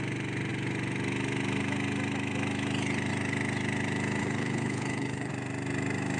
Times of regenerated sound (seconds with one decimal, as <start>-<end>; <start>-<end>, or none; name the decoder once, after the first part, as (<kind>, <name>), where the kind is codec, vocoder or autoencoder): 4.2-5.3 (codec, HILCodec)